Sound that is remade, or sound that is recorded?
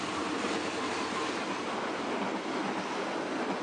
recorded